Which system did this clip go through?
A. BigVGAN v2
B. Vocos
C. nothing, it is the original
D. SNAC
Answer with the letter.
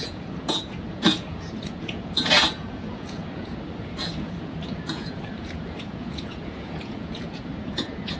B